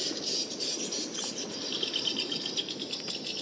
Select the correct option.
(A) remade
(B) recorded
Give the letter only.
B